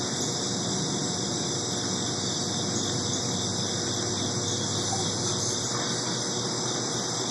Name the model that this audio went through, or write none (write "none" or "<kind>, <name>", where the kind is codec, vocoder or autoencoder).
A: none